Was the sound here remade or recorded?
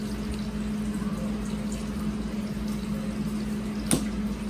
recorded